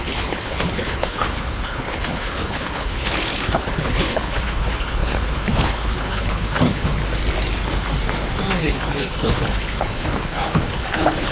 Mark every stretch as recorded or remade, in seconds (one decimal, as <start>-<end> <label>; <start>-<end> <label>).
0.0-7.0 remade; 7.0-8.6 recorded; 8.6-11.3 remade